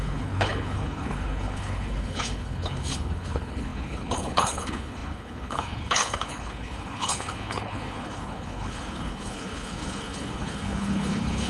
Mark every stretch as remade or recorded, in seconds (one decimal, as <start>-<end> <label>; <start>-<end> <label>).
0.0-11.5 remade